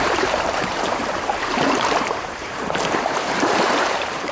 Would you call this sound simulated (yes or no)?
yes